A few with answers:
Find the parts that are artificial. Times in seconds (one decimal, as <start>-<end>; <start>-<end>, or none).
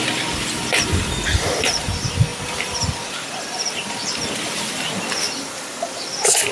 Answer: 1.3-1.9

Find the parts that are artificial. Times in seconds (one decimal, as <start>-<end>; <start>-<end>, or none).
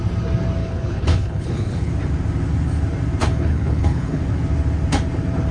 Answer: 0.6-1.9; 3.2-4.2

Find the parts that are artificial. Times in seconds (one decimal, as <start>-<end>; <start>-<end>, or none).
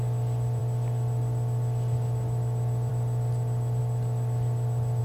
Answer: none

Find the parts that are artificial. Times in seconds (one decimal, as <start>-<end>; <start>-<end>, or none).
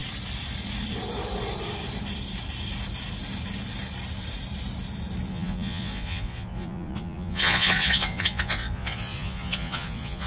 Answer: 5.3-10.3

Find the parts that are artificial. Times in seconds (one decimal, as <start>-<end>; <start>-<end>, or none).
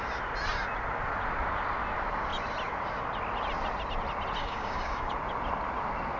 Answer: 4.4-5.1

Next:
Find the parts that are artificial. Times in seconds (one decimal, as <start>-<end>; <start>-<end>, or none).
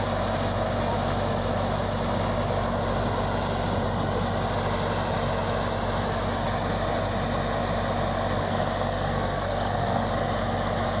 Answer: 8.4-10.1